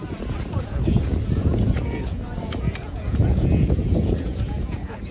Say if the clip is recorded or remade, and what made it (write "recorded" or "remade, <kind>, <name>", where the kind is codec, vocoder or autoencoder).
remade, vocoder, Vocos